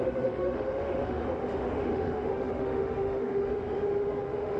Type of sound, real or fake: fake